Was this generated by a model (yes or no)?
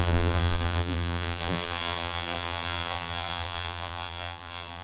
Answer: yes